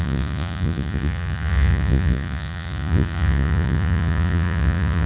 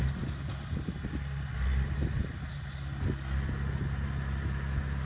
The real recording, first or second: second